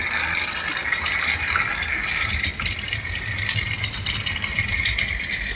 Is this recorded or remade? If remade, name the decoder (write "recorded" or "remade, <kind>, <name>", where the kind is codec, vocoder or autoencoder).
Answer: recorded